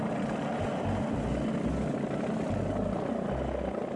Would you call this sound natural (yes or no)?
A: yes